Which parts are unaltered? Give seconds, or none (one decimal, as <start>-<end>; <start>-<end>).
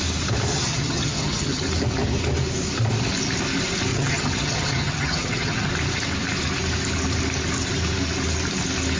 0.0-0.5; 1.6-3.9; 5.7-9.0